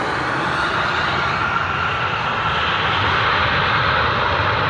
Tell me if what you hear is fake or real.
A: real